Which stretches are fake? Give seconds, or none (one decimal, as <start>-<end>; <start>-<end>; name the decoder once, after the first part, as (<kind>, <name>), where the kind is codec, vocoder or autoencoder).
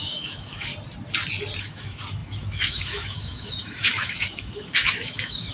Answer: 0.0-0.7 (autoencoder, DAC-VAE); 1.6-5.5